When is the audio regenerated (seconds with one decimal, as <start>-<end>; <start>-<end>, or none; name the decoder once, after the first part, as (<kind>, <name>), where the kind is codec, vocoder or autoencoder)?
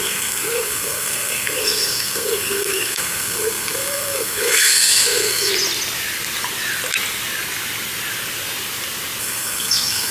0.0-5.5 (codec, SNAC); 9.2-10.1